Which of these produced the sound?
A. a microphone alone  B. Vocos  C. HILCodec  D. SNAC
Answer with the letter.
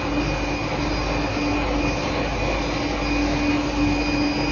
A